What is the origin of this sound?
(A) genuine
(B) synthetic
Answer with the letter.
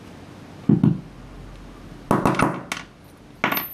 A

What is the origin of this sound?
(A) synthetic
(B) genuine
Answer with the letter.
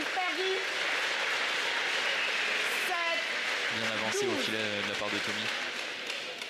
B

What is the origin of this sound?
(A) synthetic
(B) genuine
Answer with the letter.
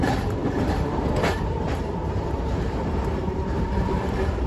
A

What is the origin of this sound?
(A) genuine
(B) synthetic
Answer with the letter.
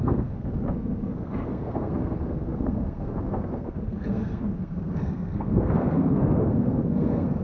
B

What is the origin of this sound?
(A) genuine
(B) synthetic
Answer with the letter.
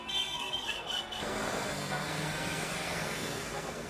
B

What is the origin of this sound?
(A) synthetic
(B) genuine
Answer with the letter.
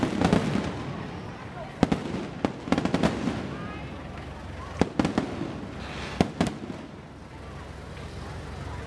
B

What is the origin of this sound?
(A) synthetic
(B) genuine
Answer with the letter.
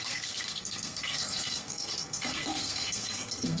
A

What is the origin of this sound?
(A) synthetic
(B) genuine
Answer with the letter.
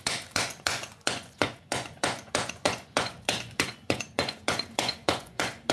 A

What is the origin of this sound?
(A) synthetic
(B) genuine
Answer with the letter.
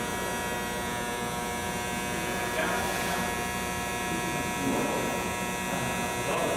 B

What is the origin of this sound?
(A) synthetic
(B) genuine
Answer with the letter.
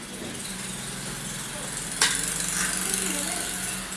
B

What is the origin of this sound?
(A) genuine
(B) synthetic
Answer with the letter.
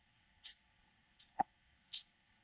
B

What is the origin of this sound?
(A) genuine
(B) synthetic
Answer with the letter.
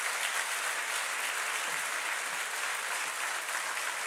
A